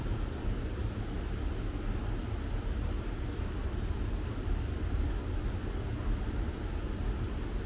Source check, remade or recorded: recorded